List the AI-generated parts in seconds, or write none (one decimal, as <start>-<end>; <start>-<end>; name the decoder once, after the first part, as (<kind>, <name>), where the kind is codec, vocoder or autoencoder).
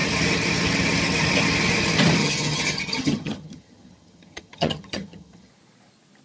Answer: 2.2-5.5 (vocoder, HiFi-GAN)